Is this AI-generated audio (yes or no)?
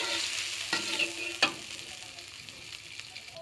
no